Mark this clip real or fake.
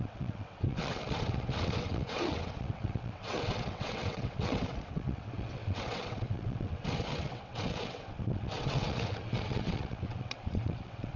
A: fake